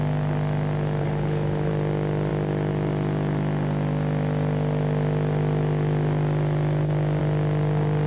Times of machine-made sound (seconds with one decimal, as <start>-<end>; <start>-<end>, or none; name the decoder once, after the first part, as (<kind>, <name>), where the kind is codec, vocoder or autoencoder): 1.0-1.7 (codec, HILCodec)